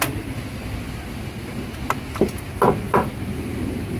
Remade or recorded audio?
recorded